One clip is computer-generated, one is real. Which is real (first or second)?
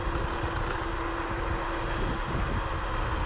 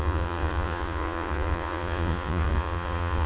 first